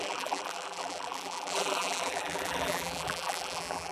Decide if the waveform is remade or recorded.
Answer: remade